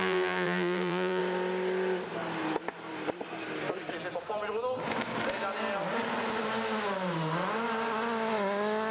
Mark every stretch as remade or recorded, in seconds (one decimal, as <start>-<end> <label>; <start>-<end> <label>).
0.0-1.2 remade; 1.2-8.9 recorded